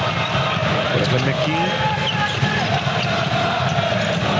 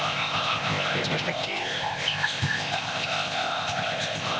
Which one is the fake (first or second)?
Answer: second